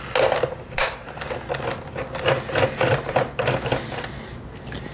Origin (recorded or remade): recorded